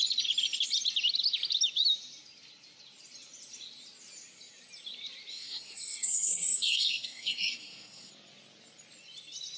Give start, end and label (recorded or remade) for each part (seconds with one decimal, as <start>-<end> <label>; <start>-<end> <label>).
0.0-5.3 recorded; 5.3-8.1 remade; 8.1-9.6 recorded